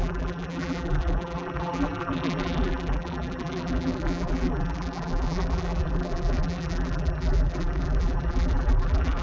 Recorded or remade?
remade